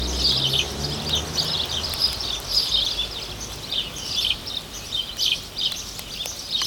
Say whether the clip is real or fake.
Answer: real